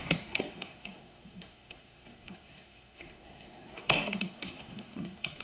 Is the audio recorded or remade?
remade